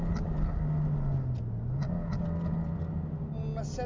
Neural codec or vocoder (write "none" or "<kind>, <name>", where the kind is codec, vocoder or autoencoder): none